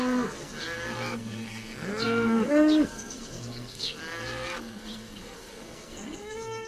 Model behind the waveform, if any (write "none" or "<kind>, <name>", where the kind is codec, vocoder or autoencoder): codec, SNAC